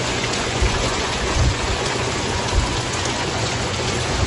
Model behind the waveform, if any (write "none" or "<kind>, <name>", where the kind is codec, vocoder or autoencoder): vocoder, Vocos